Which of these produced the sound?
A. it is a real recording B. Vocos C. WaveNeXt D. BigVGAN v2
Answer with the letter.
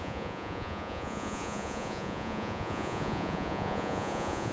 B